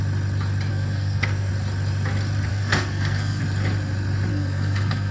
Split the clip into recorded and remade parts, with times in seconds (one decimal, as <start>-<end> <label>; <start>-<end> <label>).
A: 0.0-0.7 recorded; 0.7-1.5 remade; 1.5-2.5 recorded; 2.5-3.4 remade; 3.4-4.3 recorded; 4.3-5.1 remade